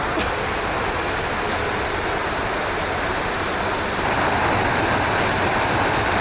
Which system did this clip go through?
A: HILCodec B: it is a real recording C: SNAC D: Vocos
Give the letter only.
B